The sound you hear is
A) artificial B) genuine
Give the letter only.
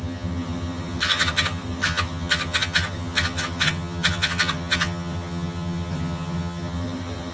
A